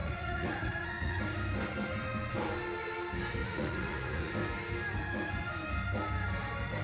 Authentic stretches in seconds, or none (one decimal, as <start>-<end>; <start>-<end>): 1.2-3.4; 4.3-6.8